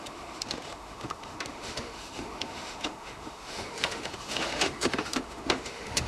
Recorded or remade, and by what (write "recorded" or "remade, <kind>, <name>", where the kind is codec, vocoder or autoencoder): remade, autoencoder, DAC-VAE